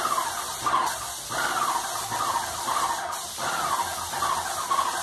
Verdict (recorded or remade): recorded